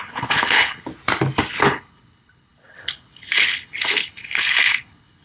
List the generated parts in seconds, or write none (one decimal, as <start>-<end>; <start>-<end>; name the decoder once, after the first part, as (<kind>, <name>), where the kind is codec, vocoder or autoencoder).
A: 0.0-0.9 (codec, HILCodec); 1.5-5.2